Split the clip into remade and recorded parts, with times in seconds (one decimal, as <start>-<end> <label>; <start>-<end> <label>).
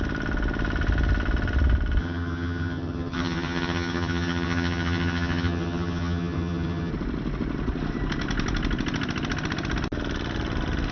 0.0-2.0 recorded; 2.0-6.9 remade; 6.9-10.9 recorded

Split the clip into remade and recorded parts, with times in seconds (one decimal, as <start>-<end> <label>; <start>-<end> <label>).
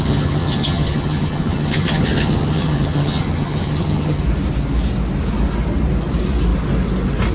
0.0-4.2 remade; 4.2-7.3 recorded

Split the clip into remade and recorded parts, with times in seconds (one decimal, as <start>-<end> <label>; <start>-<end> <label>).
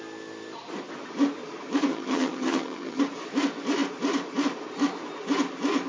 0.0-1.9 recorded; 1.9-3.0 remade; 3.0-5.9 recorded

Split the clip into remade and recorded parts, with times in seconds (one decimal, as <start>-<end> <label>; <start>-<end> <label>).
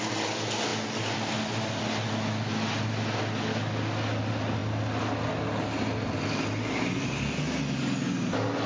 0.0-8.7 recorded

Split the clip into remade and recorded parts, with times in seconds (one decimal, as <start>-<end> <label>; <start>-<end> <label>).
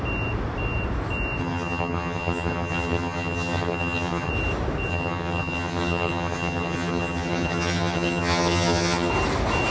0.0-1.4 recorded; 1.4-4.3 remade; 4.3-4.9 recorded; 4.9-9.1 remade; 9.1-9.7 recorded